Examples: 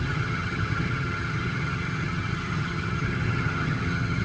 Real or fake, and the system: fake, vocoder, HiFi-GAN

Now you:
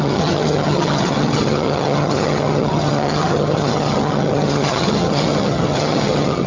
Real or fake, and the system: fake, vocoder, HiFi-GAN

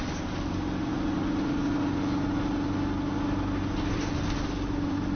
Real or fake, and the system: real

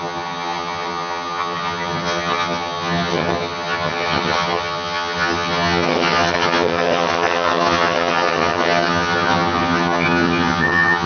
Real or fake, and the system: fake, vocoder, HiFi-GAN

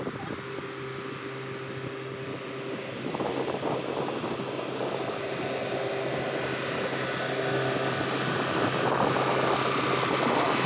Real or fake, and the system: real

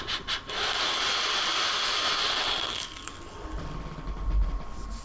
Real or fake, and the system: real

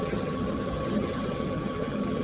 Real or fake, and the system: fake, vocoder, HiFi-GAN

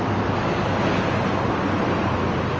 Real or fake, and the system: real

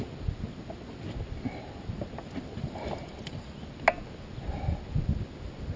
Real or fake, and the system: real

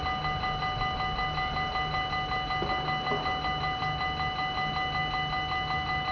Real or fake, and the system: real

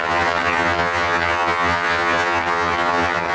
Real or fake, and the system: fake, vocoder, HiFi-GAN